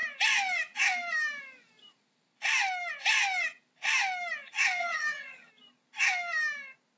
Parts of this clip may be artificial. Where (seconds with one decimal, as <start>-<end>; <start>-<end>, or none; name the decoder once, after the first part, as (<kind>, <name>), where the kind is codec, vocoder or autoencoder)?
4.8-5.5 (vocoder, HiFi-GAN)